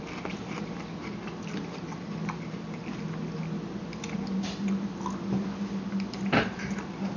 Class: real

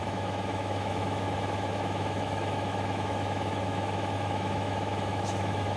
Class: fake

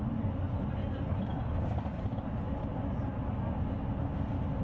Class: real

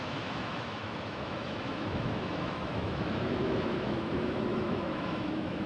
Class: fake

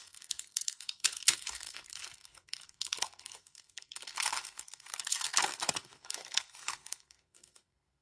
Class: fake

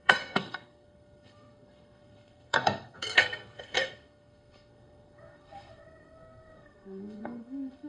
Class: fake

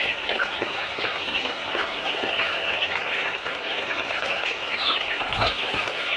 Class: fake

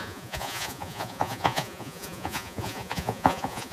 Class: fake